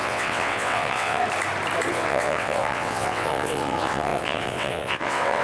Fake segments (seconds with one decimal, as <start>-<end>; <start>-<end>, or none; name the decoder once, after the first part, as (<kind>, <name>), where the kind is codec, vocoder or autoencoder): 0.0-1.2 (vocoder, WaveNeXt); 1.9-5.4